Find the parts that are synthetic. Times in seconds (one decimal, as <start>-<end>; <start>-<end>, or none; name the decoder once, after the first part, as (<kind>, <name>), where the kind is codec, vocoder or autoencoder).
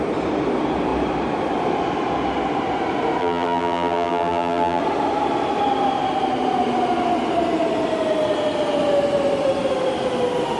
3.2-4.8 (vocoder, BigVGAN v2)